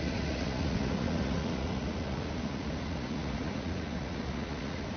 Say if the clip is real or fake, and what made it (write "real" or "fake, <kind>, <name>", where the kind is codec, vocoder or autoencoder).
fake, vocoder, Vocos